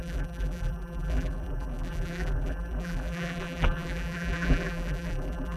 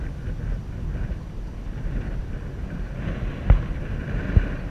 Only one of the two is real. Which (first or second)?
second